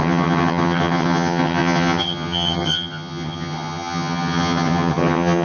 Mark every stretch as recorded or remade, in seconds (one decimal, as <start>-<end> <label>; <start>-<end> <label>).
0.0-5.4 remade